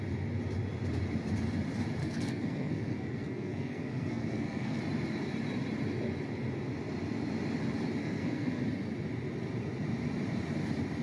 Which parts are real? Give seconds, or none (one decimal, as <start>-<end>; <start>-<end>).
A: 0.0-2.0; 4.8-8.0; 8.6-11.0